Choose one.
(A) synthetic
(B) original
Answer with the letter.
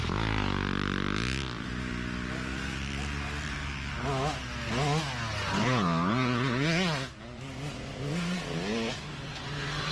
B